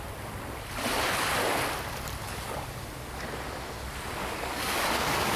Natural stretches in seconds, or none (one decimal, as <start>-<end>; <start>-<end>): 0.0-2.2; 2.8-4.2